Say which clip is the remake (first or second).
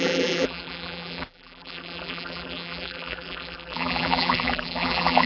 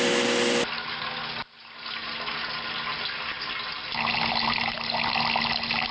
first